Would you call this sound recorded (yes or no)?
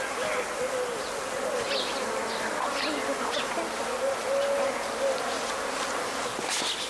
yes